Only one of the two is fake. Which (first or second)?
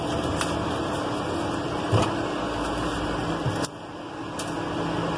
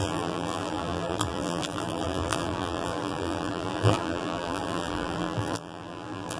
second